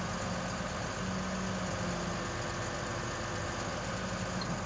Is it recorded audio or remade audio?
recorded